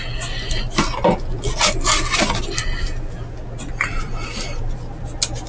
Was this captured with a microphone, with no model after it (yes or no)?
yes